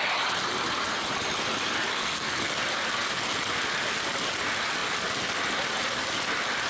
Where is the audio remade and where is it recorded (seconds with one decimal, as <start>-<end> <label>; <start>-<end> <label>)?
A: 0.0-1.9 recorded; 1.9-2.6 remade; 2.6-6.7 recorded